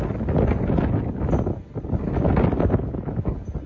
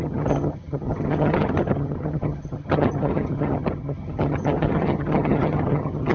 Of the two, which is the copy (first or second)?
second